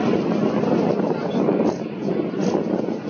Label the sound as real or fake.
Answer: real